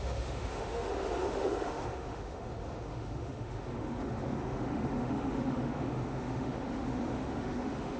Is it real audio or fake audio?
fake